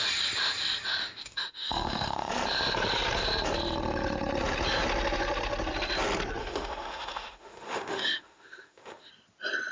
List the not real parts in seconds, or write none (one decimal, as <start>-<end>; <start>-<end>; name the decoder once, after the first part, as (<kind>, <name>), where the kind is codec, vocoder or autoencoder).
1.0-2.3 (autoencoder, DAC-VAE); 6.4-9.1